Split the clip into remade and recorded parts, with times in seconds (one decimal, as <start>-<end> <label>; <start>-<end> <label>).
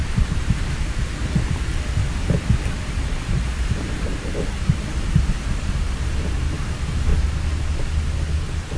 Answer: 0.0-7.1 remade; 7.1-8.8 recorded